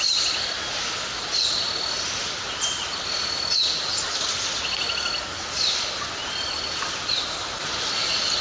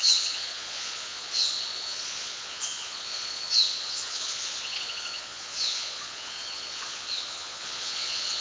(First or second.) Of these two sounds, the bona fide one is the first